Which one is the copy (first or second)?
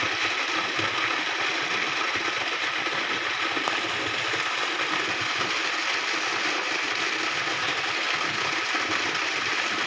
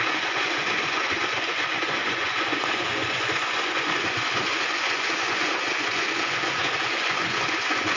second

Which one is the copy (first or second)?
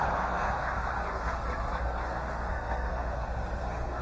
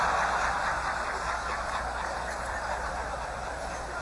first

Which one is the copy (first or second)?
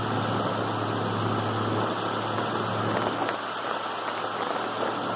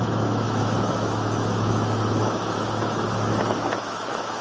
second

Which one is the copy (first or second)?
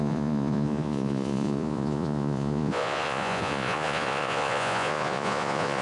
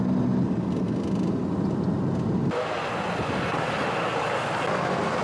first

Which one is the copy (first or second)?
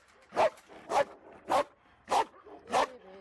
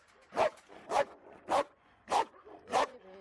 second